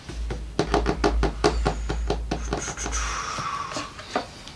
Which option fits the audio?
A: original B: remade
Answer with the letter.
A